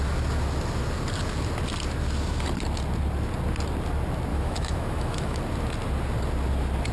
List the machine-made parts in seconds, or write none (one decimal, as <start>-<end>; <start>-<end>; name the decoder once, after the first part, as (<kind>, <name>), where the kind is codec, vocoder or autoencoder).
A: 4.3-5.4 (autoencoder, DAC-VAE)